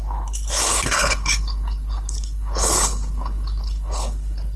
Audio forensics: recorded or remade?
remade